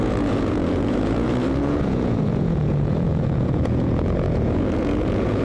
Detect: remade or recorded remade